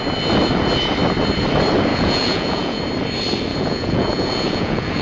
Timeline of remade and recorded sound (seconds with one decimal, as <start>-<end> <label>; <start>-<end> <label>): 0.0-1.9 recorded; 1.9-2.8 remade; 2.8-3.5 recorded; 3.5-5.0 remade